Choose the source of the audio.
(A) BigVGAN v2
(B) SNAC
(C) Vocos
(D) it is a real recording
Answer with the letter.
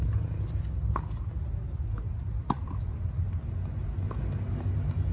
D